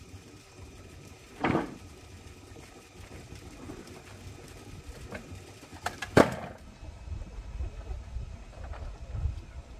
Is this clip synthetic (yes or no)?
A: no